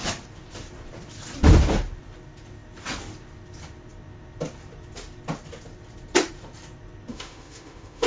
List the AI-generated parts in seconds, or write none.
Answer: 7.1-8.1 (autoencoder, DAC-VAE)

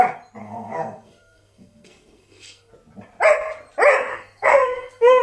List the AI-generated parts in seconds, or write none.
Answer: 0.4-2.7 (codec, SNAC); 4.1-5.2

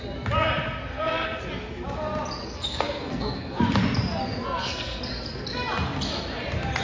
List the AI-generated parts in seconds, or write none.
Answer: 0.9-1.4 (codec, SNAC); 2.4-3.6; 4.2-5.0